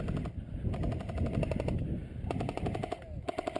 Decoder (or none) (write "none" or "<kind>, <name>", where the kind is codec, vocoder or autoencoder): none